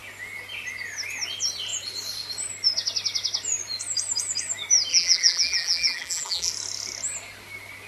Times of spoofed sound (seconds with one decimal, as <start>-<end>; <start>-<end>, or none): 4.9-6.5